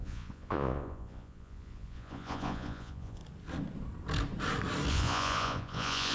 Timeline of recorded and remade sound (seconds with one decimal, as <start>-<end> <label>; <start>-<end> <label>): 0.0-3.2 remade; 3.2-4.9 recorded; 4.9-6.1 remade

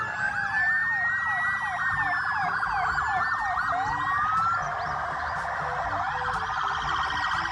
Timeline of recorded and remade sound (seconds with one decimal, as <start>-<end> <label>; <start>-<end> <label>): 0.0-7.5 recorded

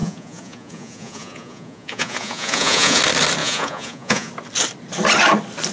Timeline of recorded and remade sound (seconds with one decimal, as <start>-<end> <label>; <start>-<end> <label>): 0.0-3.0 remade; 3.0-3.4 recorded; 3.4-4.3 remade; 4.3-5.7 recorded

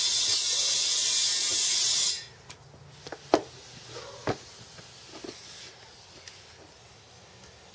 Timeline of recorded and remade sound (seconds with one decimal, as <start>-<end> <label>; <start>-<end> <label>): 0.0-7.7 recorded

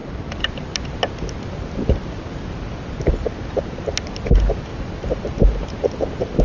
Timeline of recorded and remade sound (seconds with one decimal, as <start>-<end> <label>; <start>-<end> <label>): 0.0-1.0 remade; 1.0-4.7 recorded; 4.7-5.2 remade; 5.2-6.4 recorded

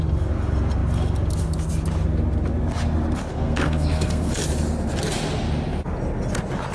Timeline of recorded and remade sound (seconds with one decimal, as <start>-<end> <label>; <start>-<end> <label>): 0.0-3.3 recorded; 3.3-4.4 remade; 4.4-6.7 recorded

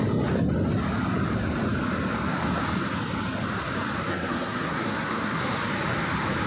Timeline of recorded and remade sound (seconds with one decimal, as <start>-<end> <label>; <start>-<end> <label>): 0.0-4.1 recorded; 4.1-5.4 remade; 5.4-6.5 recorded

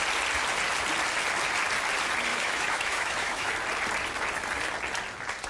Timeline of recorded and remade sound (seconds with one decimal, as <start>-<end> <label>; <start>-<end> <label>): 0.0-2.3 recorded; 2.3-3.5 remade; 3.5-5.5 recorded